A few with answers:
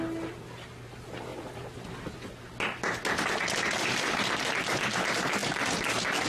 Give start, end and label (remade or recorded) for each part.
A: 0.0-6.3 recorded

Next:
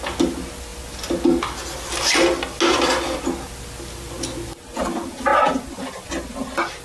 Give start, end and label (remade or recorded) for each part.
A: 0.0-6.8 recorded

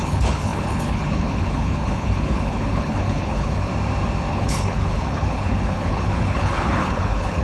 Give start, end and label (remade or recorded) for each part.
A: 0.0-3.7 remade; 3.7-4.3 recorded; 4.3-7.4 remade

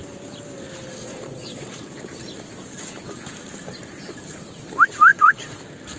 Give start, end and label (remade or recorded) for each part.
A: 0.0-1.0 recorded; 1.0-1.9 remade; 1.9-5.1 recorded; 5.1-5.6 remade; 5.6-6.0 recorded